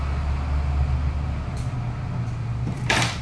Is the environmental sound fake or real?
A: real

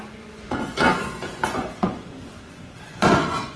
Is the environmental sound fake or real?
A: fake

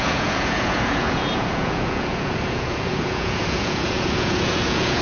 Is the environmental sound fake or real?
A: fake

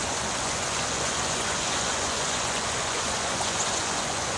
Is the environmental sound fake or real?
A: fake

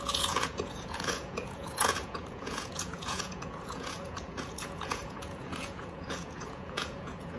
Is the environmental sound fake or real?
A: fake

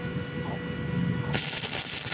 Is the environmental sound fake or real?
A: real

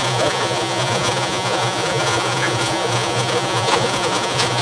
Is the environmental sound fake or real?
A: fake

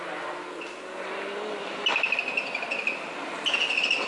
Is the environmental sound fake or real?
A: real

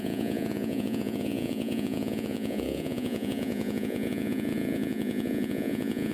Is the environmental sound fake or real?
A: fake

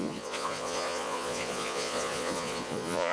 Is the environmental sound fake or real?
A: fake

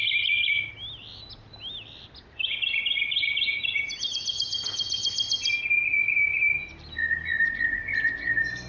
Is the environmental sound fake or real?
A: real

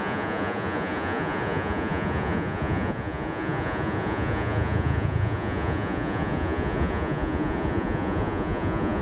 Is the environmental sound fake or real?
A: fake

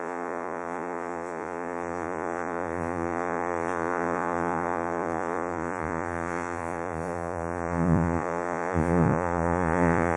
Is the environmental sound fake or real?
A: fake